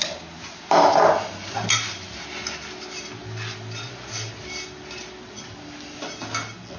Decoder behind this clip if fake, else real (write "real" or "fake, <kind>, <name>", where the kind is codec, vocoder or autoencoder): real